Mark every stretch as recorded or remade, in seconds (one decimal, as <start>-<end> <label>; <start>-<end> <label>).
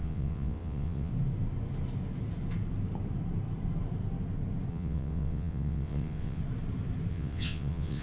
0.0-1.1 remade; 1.1-4.7 recorded; 4.7-6.4 remade; 6.4-7.1 recorded; 7.1-8.0 remade